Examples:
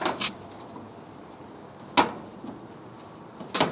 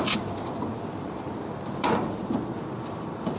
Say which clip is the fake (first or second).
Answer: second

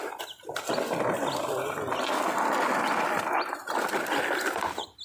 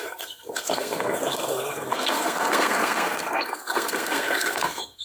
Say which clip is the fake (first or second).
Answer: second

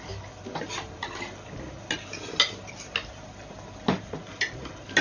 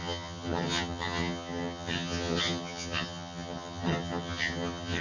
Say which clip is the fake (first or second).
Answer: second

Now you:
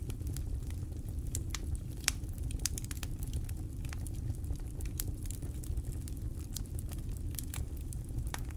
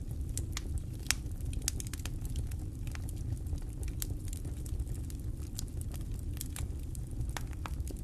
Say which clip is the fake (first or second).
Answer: first